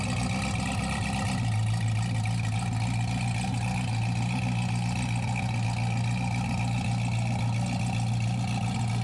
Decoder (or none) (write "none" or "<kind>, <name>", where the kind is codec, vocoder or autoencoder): none